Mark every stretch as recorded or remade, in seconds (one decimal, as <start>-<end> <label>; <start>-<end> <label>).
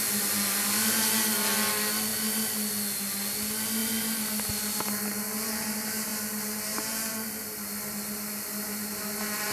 0.0-9.5 recorded